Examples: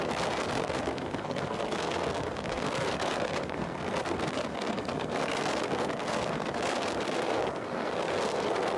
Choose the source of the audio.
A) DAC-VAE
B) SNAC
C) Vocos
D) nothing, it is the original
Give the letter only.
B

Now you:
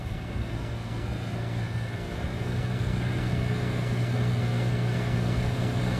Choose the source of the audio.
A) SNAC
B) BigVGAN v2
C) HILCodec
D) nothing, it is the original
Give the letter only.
A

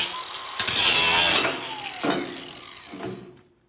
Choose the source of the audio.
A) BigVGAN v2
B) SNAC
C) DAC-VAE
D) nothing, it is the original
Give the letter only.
D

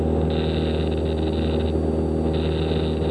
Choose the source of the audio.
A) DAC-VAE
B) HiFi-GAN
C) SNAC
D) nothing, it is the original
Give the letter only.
D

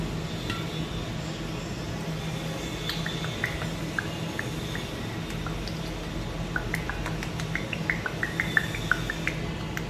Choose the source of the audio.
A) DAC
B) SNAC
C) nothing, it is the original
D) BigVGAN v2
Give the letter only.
C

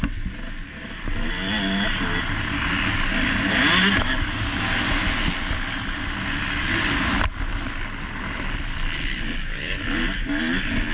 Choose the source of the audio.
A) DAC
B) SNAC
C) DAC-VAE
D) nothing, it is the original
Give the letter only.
D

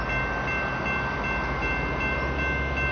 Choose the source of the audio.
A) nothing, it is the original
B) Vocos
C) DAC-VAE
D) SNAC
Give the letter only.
A